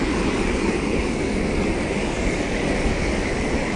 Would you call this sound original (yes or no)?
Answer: no